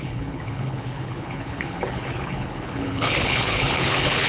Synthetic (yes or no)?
yes